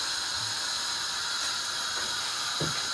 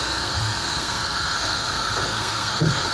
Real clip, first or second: first